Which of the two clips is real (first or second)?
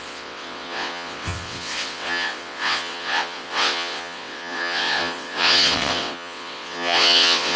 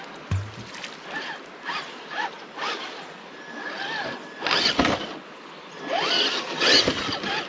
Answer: second